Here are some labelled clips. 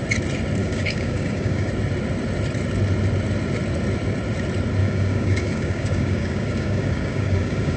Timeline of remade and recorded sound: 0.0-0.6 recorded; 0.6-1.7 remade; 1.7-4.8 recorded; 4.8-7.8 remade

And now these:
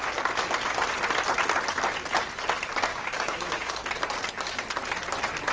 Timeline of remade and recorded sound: 0.0-2.9 recorded; 2.9-3.8 remade; 3.8-5.5 recorded

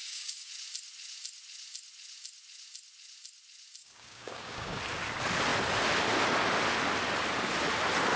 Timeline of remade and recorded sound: 0.0-0.5 remade; 0.5-3.8 recorded; 3.8-4.8 remade; 4.8-8.2 recorded

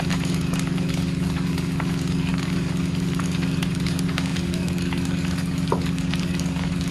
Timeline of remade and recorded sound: 0.0-6.9 remade